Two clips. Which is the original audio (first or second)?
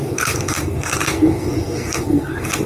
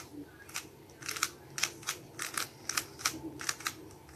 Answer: second